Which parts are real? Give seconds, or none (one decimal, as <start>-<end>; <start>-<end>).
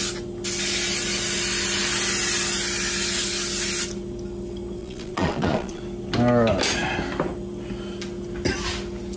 0.0-4.8; 5.8-9.2